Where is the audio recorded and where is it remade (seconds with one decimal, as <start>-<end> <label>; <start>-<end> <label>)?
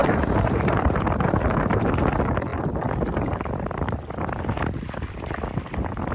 0.0-1.3 remade; 1.3-6.1 recorded